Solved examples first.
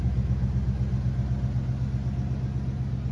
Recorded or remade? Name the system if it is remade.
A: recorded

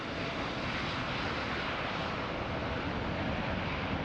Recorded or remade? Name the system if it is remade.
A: recorded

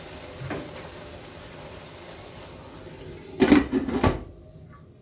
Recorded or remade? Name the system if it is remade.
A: recorded